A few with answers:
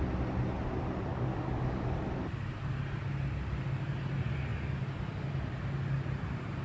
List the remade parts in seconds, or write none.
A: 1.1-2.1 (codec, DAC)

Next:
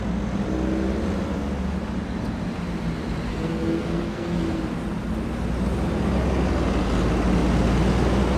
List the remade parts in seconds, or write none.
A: 3.3-4.6 (codec, SNAC)

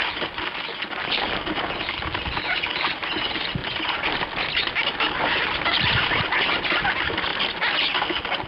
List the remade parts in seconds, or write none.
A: none

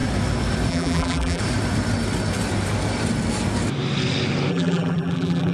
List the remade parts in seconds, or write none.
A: 0.7-1.4 (vocoder, BigVGAN v2); 4.5-5.5